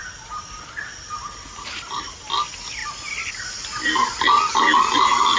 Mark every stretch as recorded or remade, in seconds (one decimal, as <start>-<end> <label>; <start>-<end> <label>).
0.0-5.4 recorded